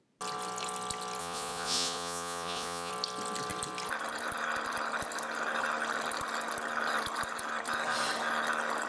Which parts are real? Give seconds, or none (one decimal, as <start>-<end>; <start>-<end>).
0.0-1.2; 2.9-8.9